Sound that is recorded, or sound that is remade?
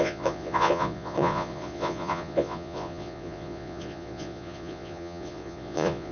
remade